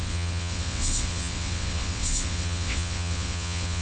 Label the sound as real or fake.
fake